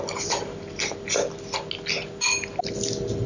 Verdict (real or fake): real